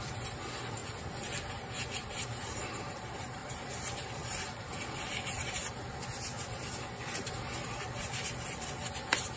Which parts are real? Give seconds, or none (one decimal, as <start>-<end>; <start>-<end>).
0.8-1.5; 5.6-8.0